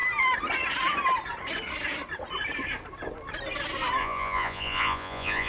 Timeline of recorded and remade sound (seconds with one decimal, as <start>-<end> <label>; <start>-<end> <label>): 0.0-4.0 recorded; 4.0-5.5 remade